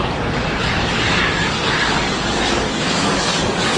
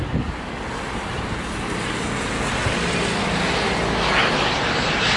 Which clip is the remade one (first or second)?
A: first